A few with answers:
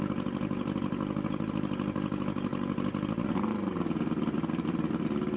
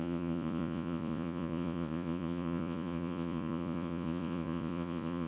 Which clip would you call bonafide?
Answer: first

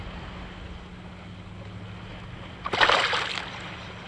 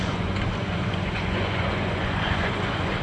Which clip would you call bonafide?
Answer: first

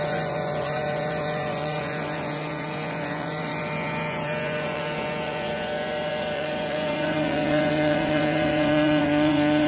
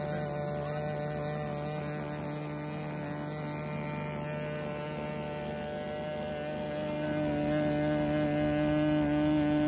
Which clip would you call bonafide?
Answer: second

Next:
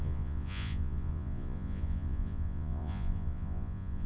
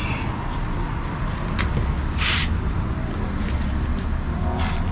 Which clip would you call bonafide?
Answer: second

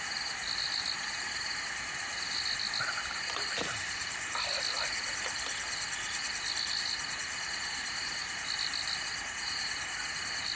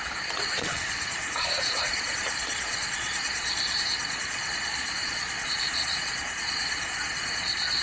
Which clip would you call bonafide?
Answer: first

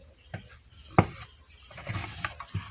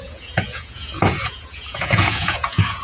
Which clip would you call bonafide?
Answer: first